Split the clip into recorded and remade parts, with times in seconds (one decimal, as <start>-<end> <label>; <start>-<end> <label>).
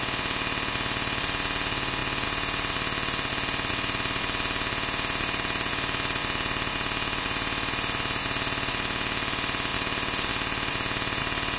0.0-11.6 remade